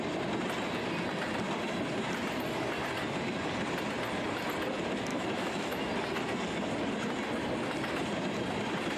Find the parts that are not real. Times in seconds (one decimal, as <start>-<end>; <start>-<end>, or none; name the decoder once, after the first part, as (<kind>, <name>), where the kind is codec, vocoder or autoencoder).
5.1-5.9 (autoencoder, DAC-VAE)